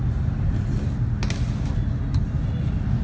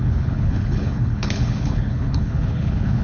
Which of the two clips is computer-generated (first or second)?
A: second